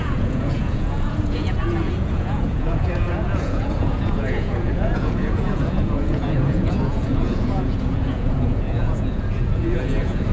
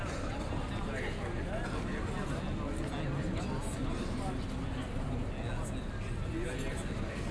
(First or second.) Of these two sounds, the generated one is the first